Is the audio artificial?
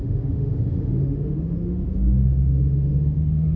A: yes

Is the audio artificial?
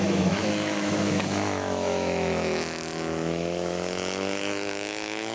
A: yes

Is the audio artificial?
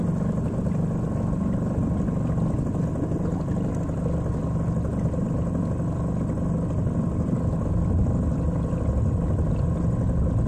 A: no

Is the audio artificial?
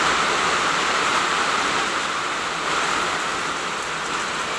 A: no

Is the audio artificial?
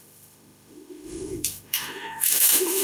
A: yes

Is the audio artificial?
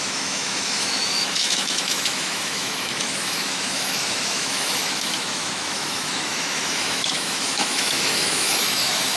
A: yes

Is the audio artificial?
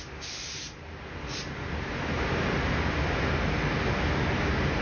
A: no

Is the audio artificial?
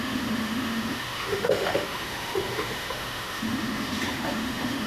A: yes